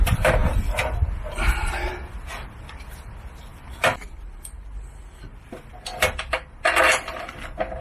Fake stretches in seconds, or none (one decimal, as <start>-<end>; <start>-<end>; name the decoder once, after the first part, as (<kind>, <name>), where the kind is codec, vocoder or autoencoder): none